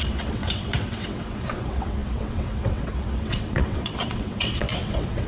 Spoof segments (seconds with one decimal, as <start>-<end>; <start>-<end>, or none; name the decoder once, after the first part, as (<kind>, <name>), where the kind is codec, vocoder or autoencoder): 0.0-5.3 (vocoder, WaveNeXt)